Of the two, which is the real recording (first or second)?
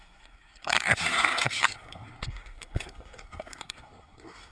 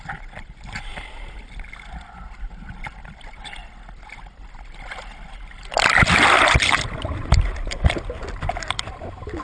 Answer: second